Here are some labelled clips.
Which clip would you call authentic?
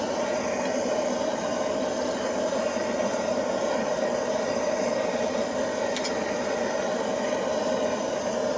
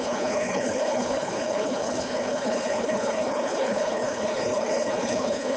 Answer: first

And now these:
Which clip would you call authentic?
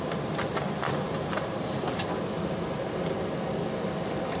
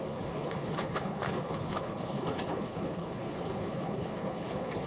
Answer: first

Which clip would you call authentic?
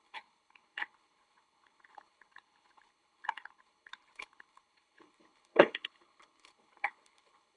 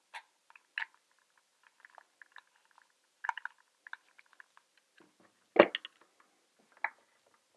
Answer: second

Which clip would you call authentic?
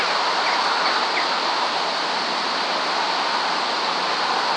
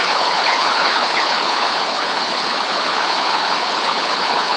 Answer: first